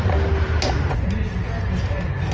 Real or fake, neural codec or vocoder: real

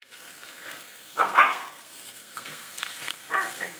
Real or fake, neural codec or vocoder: fake, codec, SNAC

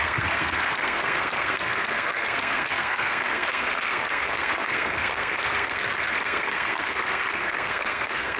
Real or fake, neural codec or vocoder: fake, codec, SNAC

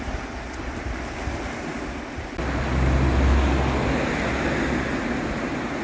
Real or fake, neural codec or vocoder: real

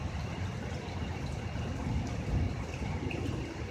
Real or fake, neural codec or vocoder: real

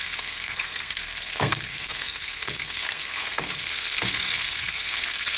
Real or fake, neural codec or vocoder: fake, codec, SNAC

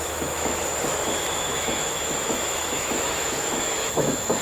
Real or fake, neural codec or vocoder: fake, autoencoder, DAC-VAE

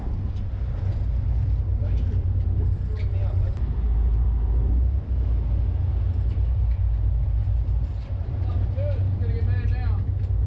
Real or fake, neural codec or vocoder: real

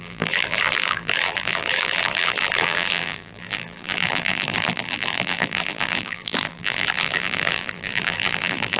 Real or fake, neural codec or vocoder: fake, vocoder, BigVGAN v2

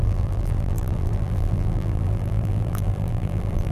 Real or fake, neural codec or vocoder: fake, vocoder, BigVGAN v2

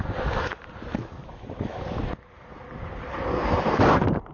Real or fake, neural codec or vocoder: real